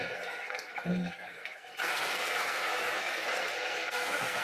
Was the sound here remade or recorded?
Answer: remade